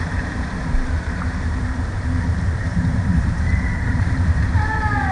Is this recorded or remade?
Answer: remade